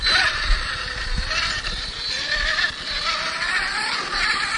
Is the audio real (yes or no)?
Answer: yes